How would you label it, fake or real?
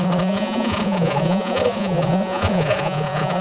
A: fake